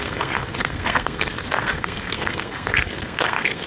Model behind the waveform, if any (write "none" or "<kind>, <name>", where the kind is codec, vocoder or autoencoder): codec, SNAC